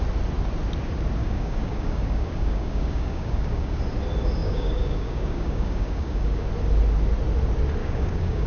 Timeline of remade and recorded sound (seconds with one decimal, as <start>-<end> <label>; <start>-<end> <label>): 0.0-1.2 recorded; 1.2-3.8 remade; 3.8-4.4 recorded; 4.4-6.5 remade; 6.5-7.8 recorded; 7.8-8.5 remade